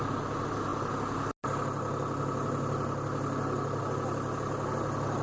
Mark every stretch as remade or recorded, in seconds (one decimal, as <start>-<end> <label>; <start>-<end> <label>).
0.0-5.2 recorded